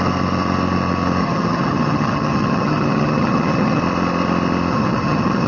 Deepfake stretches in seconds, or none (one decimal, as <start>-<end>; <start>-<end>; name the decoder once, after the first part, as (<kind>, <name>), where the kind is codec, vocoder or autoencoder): 1.2-3.8 (vocoder, HiFi-GAN); 4.7-5.5